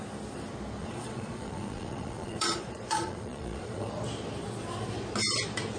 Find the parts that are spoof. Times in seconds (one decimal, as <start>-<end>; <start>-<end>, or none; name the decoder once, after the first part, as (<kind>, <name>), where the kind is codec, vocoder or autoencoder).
0.8-3.9 (vocoder, Vocos)